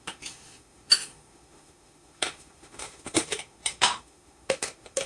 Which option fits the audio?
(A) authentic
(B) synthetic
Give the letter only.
B